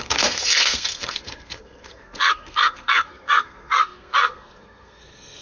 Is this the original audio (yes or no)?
no